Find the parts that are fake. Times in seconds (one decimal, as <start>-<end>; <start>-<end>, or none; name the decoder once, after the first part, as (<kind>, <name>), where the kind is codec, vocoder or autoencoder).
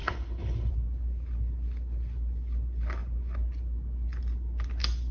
0.0-0.7 (codec, HILCodec)